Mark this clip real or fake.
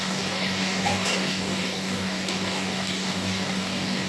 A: fake